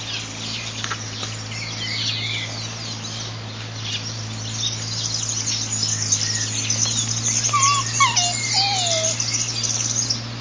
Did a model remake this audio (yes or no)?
no